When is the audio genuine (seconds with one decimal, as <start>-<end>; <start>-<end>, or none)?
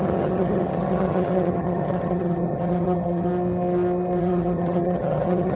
3.3-4.2